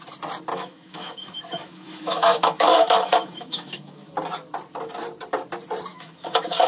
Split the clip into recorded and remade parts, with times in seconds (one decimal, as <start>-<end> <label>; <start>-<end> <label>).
0.0-0.5 recorded; 0.5-4.1 remade; 4.1-5.9 recorded; 5.9-6.7 remade